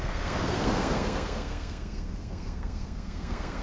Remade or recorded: remade